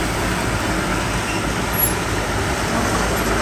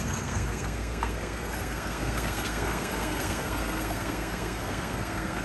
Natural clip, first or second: first